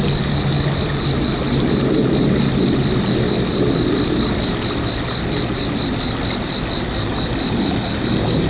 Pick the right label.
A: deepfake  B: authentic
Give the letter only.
B